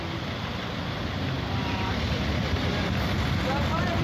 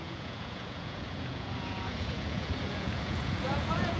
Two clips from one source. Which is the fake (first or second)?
second